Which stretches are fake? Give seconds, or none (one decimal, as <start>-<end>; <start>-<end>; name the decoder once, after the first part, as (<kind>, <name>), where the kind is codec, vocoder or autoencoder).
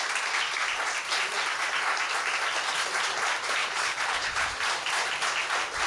3.6-4.5 (codec, HILCodec)